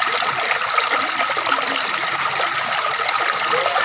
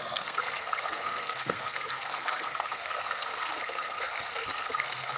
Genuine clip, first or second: first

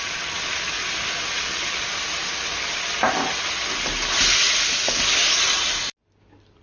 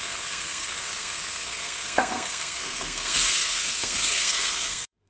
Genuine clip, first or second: first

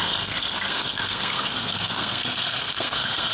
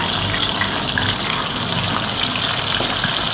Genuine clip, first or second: second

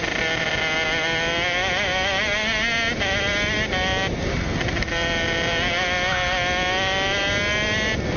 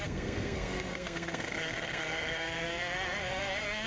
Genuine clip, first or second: first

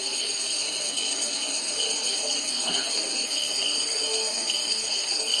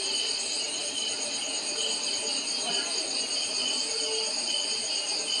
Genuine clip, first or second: second